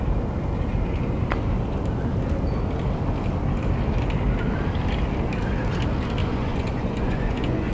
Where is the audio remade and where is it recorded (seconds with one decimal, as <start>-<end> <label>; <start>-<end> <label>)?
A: 0.0-6.2 recorded; 6.2-7.7 remade